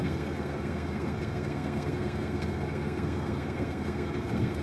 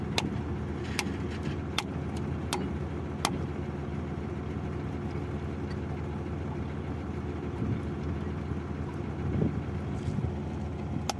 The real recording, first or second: second